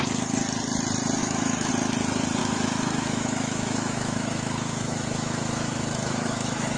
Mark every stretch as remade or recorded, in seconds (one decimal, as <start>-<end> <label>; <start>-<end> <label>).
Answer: 0.0-1.2 recorded; 1.2-1.7 remade; 1.7-2.4 recorded; 2.4-6.8 remade